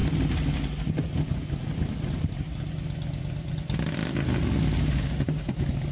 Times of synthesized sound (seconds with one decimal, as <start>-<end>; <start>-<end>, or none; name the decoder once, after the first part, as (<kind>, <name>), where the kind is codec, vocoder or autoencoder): none